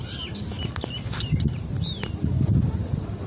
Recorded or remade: recorded